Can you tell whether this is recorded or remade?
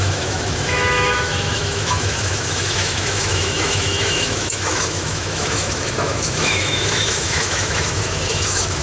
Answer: remade